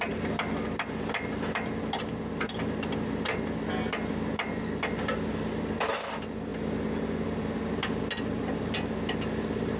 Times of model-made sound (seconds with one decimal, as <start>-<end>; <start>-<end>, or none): none